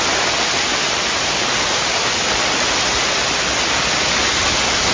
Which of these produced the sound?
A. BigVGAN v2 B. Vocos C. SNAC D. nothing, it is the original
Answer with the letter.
D